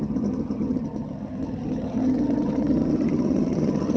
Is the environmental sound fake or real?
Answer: fake